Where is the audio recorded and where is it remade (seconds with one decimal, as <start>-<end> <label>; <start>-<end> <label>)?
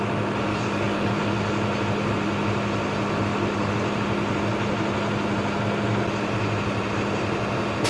0.0-0.5 recorded; 0.5-1.1 remade; 1.1-7.9 recorded